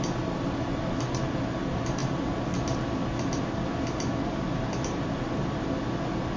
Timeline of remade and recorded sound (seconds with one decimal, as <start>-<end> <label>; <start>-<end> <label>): 0.0-6.4 recorded